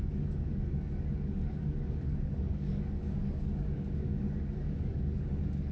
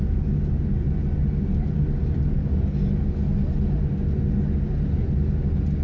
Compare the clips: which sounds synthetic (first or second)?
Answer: first